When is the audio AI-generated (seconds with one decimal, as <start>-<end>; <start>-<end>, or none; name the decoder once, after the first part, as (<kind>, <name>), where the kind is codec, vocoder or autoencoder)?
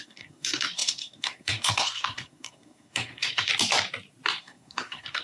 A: 0.0-3.5 (codec, SNAC); 4.4-5.2